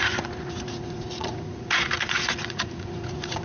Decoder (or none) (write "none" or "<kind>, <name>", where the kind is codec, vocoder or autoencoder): vocoder, Vocos